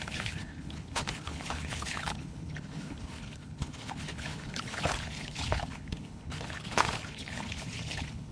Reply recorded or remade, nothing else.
remade